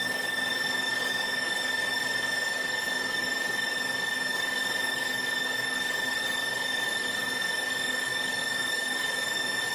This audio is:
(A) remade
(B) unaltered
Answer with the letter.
A